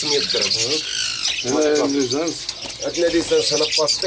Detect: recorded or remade recorded